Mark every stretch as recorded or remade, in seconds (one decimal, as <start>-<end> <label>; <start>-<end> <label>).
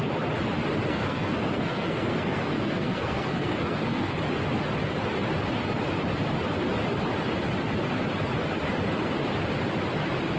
0.0-0.9 recorded; 0.9-4.2 remade; 4.2-10.4 recorded